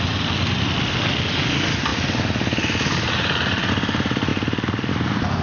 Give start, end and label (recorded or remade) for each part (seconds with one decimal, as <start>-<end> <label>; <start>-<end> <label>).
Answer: 0.0-5.4 recorded